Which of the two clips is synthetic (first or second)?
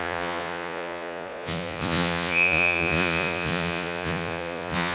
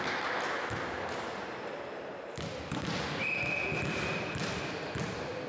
first